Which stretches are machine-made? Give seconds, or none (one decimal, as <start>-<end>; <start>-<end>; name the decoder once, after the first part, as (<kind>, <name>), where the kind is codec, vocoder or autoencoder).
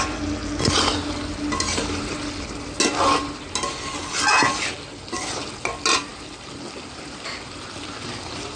none